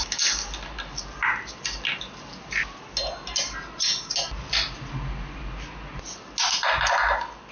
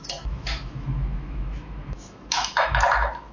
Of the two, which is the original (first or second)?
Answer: first